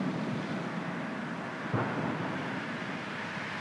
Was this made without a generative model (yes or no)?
yes